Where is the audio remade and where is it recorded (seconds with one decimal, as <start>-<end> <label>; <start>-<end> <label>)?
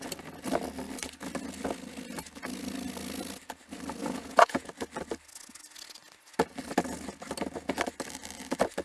0.0-4.0 recorded; 4.0-4.7 remade; 4.7-8.8 recorded